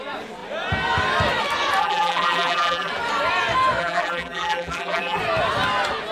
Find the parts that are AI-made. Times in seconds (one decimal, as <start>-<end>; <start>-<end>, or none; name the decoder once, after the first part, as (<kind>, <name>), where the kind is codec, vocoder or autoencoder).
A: 1.8-2.9 (vocoder, BigVGAN v2); 3.8-5.2